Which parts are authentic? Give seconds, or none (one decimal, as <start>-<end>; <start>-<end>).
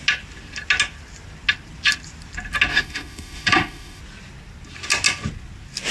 0.0-2.7; 4.0-5.9